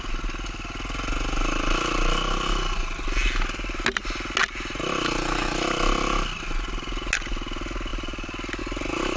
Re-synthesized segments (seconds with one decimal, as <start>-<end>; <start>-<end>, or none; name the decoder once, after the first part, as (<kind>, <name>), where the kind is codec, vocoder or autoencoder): 7.9-8.6 (vocoder, BigVGAN v2)